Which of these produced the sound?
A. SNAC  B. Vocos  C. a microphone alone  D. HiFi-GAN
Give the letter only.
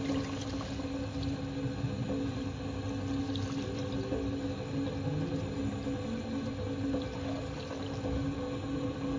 C